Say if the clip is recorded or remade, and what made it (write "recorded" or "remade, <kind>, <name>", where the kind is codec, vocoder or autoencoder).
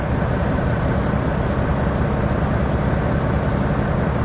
recorded